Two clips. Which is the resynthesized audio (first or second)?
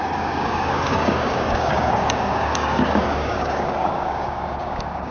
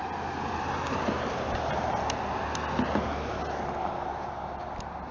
first